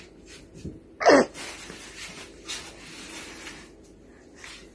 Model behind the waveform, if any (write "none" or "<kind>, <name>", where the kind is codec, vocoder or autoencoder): none